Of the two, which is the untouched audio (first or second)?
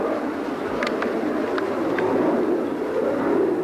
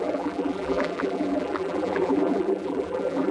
first